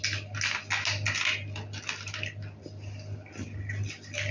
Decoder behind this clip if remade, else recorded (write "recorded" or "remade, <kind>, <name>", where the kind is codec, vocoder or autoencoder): recorded